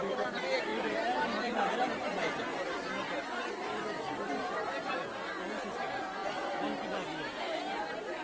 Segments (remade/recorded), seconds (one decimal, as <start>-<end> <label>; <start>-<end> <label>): 0.0-0.7 recorded; 0.7-2.4 remade; 2.4-8.2 recorded